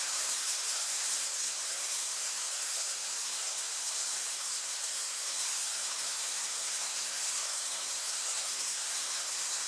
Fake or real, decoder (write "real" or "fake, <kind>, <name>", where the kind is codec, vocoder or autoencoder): fake, codec, SNAC